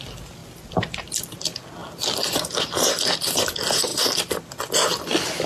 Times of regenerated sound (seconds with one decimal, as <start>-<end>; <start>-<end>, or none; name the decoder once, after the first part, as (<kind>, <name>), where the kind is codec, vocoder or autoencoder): 0.4-1.2 (vocoder, BigVGAN v2); 1.8-3.4